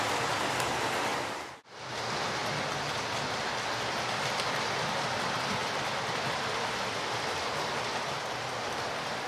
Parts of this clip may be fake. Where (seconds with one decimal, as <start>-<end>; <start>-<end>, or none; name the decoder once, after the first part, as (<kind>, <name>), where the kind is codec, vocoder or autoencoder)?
1.1-1.9 (vocoder, BigVGAN v2); 5.6-8.2